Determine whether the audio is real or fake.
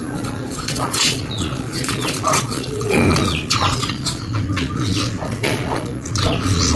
fake